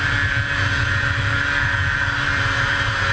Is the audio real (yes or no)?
yes